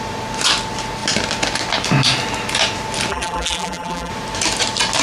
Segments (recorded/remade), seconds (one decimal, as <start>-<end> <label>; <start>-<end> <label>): 0.0-3.1 recorded; 3.1-4.1 remade; 4.1-5.0 recorded